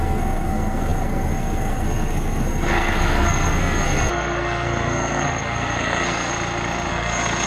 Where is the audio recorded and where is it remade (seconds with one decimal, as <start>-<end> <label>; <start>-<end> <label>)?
0.0-6.3 remade; 6.3-6.9 recorded; 6.9-7.5 remade